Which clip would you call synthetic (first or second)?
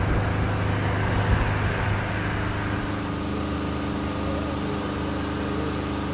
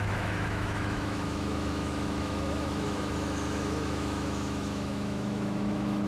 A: second